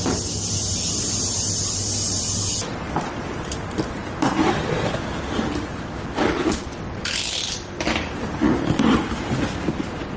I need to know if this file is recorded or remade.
recorded